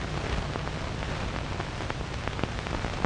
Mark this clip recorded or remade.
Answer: recorded